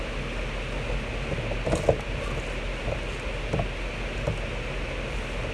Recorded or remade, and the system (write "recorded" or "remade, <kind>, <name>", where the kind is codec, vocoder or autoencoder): recorded